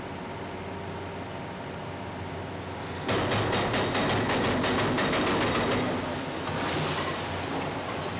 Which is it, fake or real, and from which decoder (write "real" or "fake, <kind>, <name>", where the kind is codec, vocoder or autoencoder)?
real